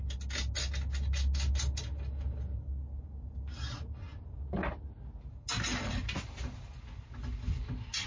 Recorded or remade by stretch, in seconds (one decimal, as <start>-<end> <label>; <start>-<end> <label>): 0.0-8.1 recorded